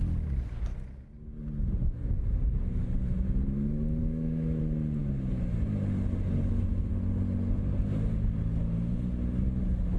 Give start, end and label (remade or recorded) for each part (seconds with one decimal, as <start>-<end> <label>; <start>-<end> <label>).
0.0-4.0 recorded; 4.0-4.6 remade; 4.6-10.0 recorded